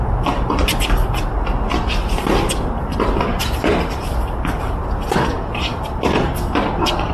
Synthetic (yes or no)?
no